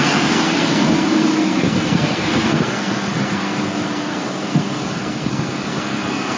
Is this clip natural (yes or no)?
no